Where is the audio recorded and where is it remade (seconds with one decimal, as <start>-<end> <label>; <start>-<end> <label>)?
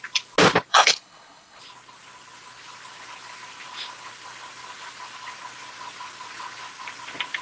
0.0-0.7 recorded; 0.7-1.6 remade; 1.6-7.4 recorded